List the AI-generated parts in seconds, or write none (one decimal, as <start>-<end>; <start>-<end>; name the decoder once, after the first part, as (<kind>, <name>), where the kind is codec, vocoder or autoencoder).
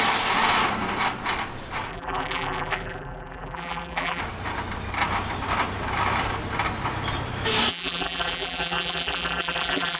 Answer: 1.9-4.2 (vocoder, BigVGAN v2); 7.7-10.0